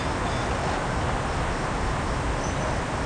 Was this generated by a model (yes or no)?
no